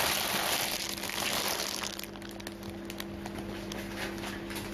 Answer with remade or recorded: recorded